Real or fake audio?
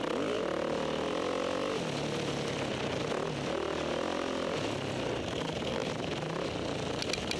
real